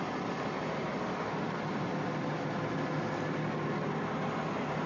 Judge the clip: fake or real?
real